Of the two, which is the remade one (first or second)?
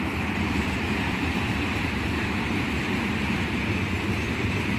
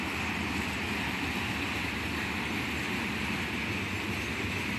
first